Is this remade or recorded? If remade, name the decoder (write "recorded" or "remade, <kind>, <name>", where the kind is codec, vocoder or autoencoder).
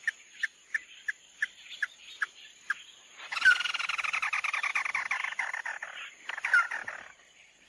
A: recorded